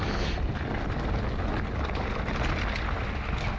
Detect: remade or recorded recorded